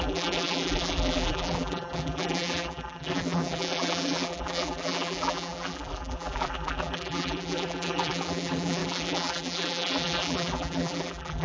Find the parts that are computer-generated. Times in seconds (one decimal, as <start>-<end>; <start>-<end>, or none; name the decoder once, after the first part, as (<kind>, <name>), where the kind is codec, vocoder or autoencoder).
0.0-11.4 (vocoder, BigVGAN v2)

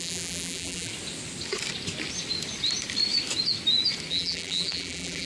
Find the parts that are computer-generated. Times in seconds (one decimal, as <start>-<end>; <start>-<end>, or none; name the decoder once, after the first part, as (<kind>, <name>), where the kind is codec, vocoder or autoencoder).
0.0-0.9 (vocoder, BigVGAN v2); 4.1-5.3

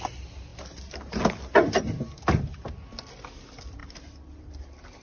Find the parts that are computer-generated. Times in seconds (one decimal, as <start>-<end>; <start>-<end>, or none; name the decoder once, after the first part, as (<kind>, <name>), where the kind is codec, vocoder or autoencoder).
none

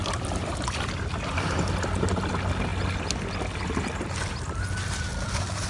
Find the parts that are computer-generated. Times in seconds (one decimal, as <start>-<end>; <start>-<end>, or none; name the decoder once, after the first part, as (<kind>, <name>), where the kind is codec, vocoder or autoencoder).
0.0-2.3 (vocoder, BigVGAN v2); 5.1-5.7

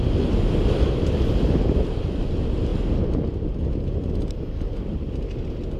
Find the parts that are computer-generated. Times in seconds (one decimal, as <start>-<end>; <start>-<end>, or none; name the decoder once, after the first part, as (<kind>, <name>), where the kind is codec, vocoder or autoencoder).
none